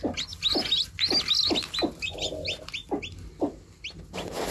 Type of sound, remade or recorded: recorded